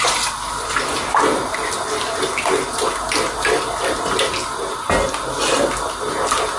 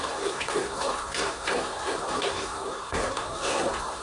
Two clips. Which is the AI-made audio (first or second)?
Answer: second